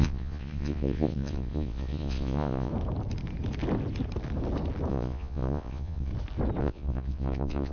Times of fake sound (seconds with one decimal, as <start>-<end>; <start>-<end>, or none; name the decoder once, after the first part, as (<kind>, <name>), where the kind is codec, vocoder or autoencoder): 0.0-2.7 (vocoder, Vocos); 4.9-6.1; 6.6-7.7